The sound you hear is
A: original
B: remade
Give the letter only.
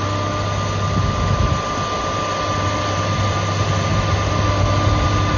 A